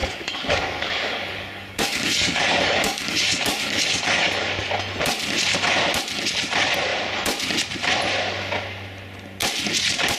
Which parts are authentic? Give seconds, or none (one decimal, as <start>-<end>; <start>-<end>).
4.7-10.2